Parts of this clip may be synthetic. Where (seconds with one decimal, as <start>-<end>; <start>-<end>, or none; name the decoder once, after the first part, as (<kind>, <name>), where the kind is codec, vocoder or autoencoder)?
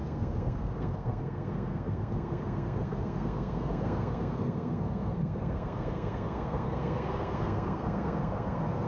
0.0-8.9 (codec, SNAC)